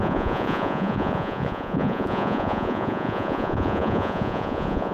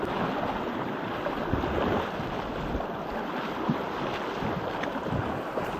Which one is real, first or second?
second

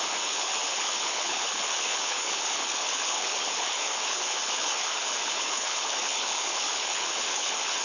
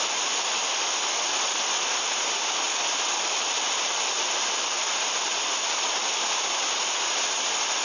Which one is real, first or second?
second